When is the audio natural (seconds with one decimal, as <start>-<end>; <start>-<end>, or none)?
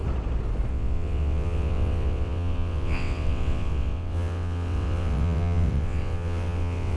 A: 0.0-0.7